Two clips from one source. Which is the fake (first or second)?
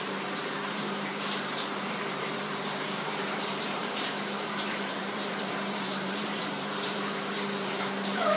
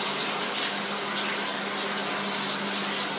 first